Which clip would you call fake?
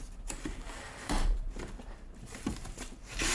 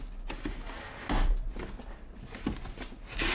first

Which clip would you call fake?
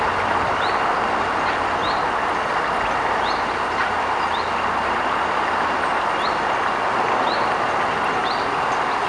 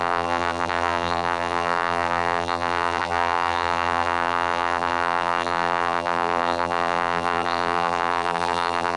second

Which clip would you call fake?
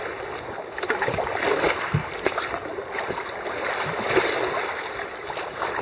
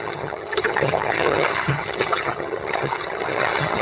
second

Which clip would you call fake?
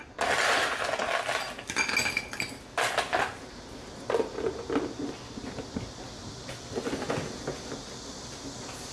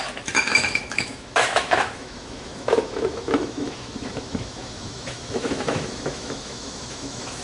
second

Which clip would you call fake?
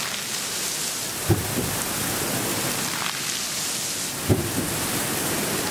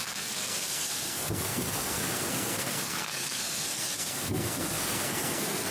second